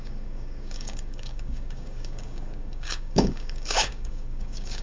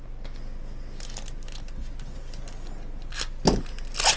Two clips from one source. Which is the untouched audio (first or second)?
second